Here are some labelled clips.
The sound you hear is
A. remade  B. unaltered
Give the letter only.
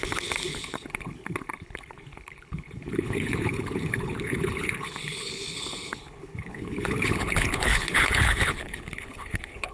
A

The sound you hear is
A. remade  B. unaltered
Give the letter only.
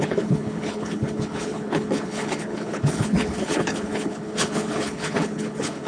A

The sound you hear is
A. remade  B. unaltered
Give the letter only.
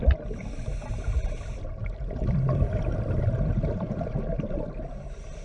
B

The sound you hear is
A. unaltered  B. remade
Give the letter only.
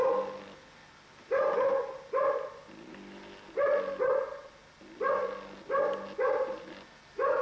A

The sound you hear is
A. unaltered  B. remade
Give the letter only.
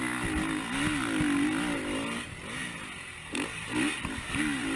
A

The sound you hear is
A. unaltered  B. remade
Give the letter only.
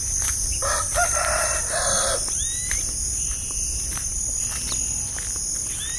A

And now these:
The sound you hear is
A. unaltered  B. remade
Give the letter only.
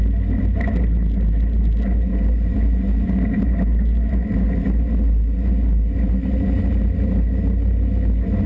A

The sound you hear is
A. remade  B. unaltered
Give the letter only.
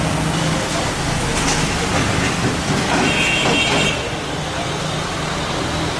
B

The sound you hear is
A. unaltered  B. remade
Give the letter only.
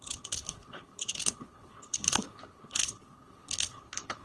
B